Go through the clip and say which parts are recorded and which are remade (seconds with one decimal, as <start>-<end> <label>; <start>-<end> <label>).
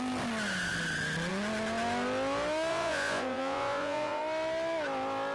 0.0-2.7 recorded; 2.7-4.2 remade; 4.2-5.3 recorded